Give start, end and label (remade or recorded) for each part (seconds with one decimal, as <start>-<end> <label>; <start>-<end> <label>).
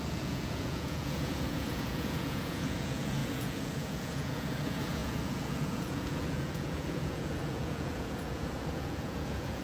0.0-9.6 remade